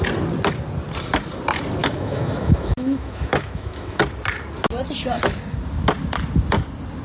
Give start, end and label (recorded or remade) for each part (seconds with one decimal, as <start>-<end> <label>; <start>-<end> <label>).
0.0-1.8 recorded; 1.8-4.0 remade; 4.0-7.0 recorded